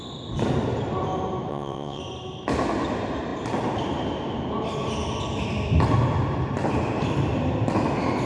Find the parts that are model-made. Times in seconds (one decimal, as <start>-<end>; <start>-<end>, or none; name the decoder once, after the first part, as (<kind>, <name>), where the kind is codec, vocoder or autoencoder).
1.5-2.0 (vocoder, WaveNeXt)